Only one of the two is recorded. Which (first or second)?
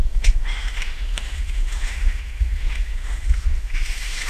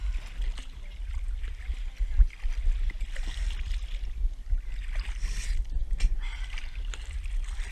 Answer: second